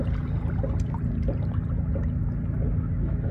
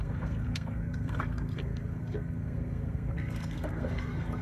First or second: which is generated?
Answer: second